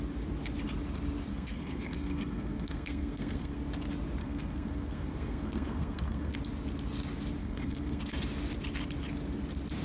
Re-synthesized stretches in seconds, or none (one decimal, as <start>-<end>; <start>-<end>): 1.3-3.6; 4.2-6.3; 7.4-8.0